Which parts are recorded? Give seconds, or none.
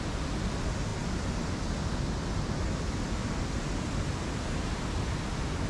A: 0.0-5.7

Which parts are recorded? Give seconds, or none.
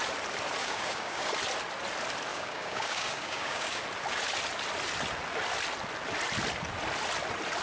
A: 0.0-0.6; 1.3-2.3; 3.8-7.6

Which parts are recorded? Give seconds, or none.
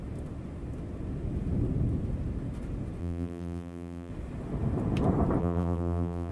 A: 0.0-3.0; 4.1-5.4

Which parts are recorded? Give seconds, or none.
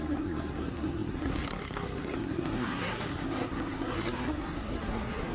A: none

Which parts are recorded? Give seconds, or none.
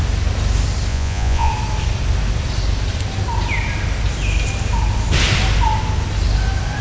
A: 0.0-0.9; 1.5-6.8